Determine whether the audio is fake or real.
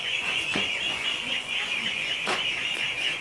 fake